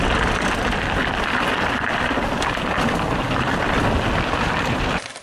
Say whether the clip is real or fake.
real